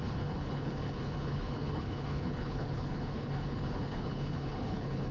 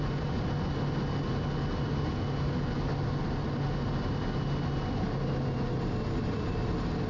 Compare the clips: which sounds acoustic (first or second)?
second